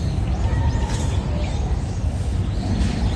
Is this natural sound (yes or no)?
yes